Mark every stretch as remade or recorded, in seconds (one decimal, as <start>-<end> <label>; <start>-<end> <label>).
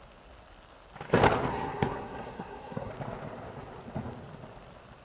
0.0-1.5 recorded; 1.5-2.9 remade; 2.9-5.0 recorded